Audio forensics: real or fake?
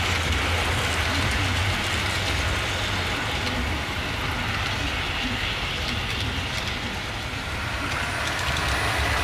real